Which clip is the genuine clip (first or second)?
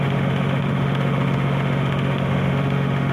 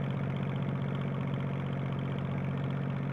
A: second